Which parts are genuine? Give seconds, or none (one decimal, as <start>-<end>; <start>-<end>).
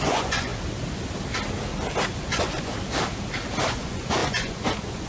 0.5-2.2; 2.7-3.7